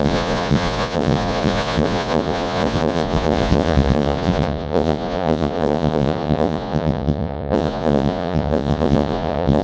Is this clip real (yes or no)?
no